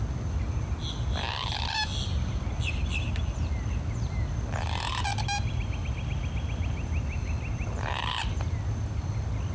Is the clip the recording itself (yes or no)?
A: yes